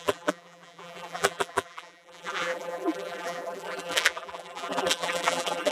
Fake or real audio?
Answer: fake